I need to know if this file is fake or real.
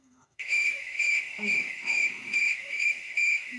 fake